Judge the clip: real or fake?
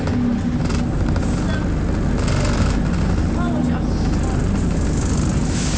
real